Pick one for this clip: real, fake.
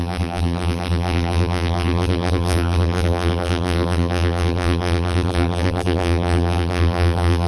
fake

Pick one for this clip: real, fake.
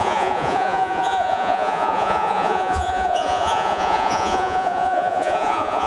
fake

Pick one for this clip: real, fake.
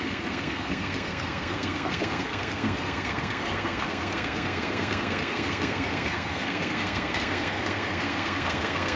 fake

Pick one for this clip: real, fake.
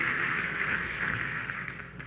fake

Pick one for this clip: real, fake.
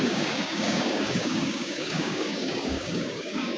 fake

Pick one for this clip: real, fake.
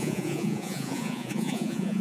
fake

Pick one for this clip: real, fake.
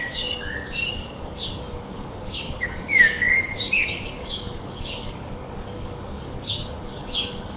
fake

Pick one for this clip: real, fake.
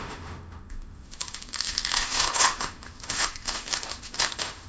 fake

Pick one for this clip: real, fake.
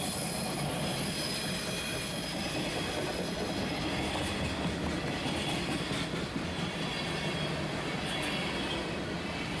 real